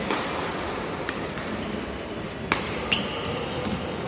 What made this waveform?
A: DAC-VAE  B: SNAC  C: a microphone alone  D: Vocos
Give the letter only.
C